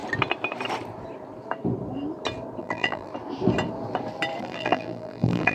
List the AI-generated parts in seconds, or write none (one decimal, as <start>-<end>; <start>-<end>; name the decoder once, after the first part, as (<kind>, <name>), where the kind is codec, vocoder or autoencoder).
2.6-3.1 (vocoder, BigVGAN v2); 4.4-5.5

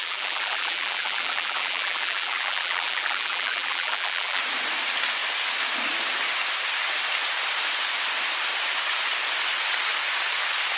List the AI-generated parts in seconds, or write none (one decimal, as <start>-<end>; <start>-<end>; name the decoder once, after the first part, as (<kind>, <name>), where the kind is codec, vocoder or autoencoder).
0.0-4.4 (vocoder, BigVGAN v2)

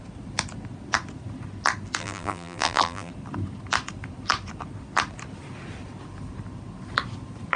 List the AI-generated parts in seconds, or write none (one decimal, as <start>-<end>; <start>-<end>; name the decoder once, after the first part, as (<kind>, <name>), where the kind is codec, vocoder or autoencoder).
2.0-3.1 (vocoder, BigVGAN v2)

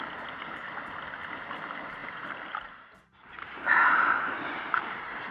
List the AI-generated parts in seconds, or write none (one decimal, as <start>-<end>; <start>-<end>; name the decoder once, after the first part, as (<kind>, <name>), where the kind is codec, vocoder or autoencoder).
2.0-5.3 (vocoder, BigVGAN v2)